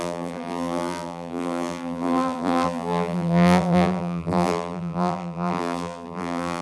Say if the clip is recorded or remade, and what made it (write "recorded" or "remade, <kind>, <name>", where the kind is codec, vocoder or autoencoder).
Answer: remade, vocoder, BigVGAN v2